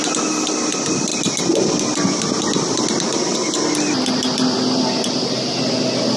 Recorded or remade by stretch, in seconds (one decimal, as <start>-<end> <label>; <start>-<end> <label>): 0.0-6.2 recorded